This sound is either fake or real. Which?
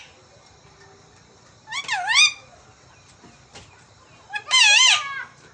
real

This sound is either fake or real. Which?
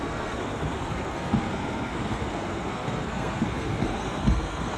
fake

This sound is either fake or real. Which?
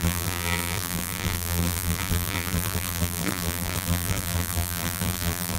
fake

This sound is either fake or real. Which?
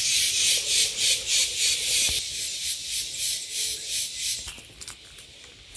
real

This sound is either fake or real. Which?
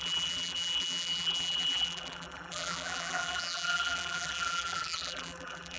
fake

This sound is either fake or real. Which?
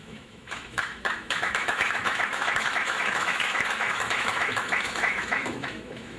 fake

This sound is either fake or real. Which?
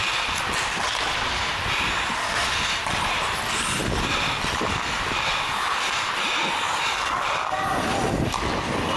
real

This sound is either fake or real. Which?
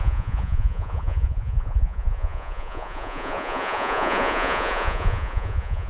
fake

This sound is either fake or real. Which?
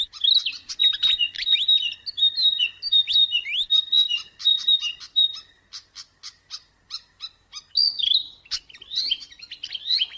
real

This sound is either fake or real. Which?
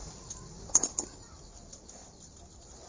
real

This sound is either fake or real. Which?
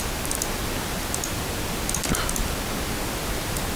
real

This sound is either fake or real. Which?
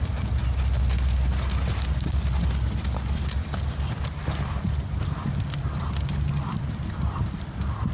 real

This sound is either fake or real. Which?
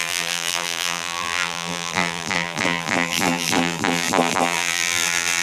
fake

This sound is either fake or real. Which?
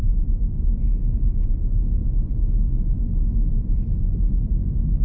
fake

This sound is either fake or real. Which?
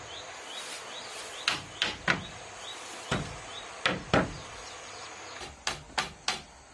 real